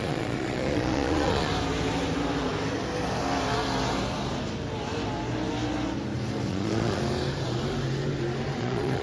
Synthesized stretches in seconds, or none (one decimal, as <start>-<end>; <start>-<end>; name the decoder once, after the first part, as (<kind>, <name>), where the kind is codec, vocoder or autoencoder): 0.0-1.5 (vocoder, Vocos); 6.5-7.0; 8.6-9.0